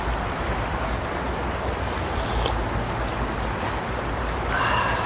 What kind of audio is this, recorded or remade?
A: recorded